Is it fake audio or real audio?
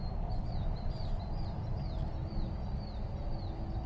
real